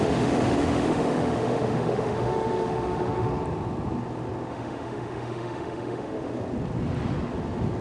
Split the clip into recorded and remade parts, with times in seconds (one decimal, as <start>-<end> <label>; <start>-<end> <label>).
0.0-3.3 remade; 3.3-4.5 recorded; 4.5-6.3 remade; 6.3-7.8 recorded